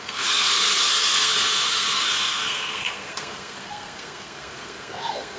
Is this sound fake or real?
fake